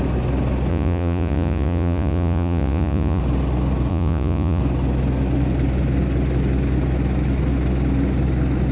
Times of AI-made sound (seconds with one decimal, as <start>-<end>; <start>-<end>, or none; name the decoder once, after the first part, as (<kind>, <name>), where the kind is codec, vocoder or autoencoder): 0.7-3.2 (vocoder, Vocos); 3.9-4.6